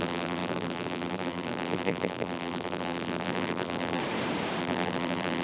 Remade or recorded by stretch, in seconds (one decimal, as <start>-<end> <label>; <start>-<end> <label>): 0.0-4.0 remade; 4.0-4.6 recorded; 4.6-5.4 remade